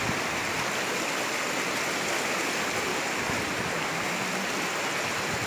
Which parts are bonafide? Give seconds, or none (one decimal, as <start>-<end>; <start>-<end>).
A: 0.0-5.5